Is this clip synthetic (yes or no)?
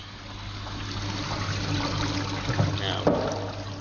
no